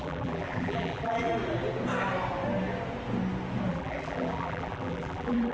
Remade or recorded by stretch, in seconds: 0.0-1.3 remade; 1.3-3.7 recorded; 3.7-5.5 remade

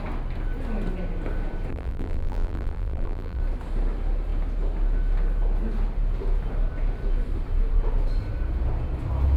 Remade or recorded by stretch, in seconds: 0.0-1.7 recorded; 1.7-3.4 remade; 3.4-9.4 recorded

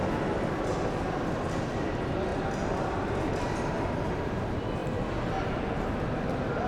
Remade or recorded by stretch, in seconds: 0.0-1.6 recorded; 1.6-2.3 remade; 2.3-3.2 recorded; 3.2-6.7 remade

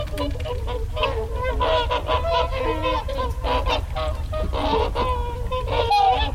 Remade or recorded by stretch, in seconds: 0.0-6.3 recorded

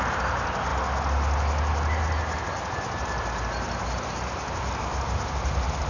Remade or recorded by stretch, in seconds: 0.0-5.9 recorded

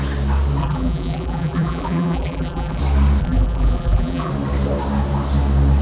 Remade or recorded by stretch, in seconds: 0.0-0.6 recorded; 0.6-2.8 remade; 2.8-3.2 recorded; 3.2-4.3 remade; 4.3-5.8 recorded

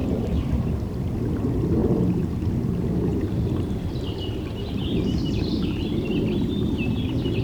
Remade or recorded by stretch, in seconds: 0.0-0.9 remade; 0.9-1.8 recorded; 1.8-2.5 remade; 2.5-3.1 recorded; 3.1-6.1 remade; 6.1-7.4 recorded

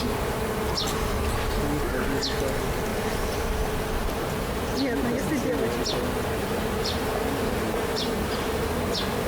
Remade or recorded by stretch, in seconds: 0.0-2.9 recorded; 2.9-3.6 remade; 3.6-4.0 recorded; 4.0-4.6 remade; 4.6-6.4 recorded; 6.4-8.7 remade; 8.7-9.3 recorded